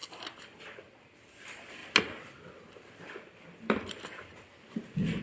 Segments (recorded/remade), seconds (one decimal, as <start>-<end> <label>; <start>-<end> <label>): 0.0-5.2 recorded